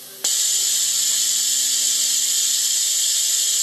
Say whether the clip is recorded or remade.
recorded